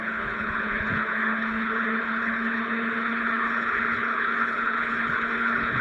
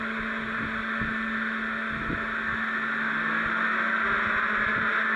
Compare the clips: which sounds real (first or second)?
second